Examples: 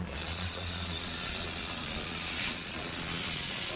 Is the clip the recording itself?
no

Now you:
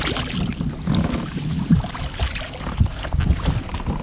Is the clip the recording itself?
yes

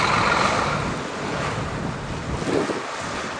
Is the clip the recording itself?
yes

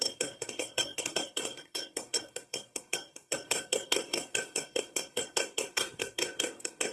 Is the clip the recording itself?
no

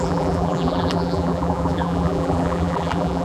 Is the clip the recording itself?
no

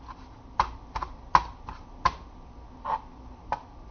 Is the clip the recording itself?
yes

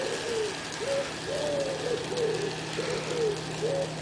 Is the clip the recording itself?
yes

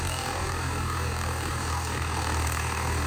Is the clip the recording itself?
no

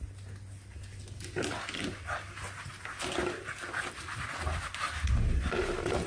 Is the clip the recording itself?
yes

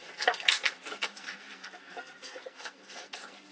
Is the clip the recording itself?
no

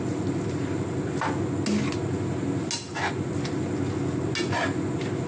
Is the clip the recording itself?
yes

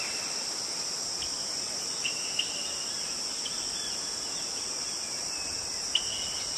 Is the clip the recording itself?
yes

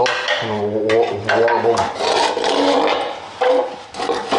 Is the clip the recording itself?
yes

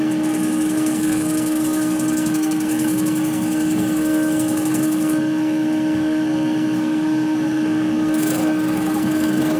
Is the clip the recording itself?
no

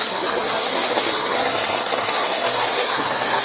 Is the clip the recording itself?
no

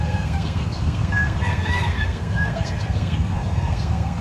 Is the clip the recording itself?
no